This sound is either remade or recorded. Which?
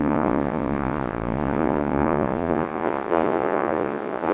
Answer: remade